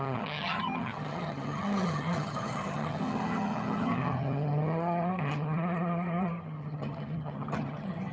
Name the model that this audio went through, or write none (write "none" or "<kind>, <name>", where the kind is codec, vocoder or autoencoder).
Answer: vocoder, HiFi-GAN